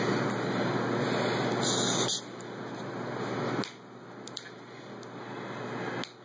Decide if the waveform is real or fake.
real